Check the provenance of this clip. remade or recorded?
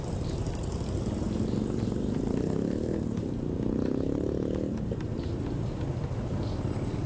recorded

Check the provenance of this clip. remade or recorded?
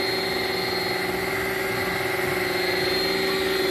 recorded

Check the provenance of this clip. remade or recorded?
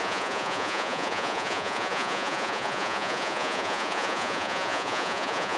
remade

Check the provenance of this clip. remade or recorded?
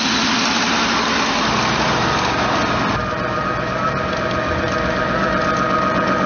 recorded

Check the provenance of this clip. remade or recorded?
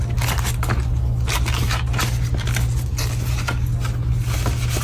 recorded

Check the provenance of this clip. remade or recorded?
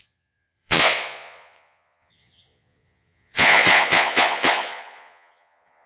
remade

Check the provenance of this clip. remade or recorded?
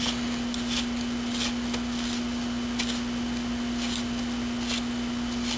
recorded